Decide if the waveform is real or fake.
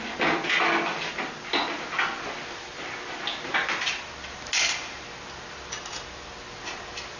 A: real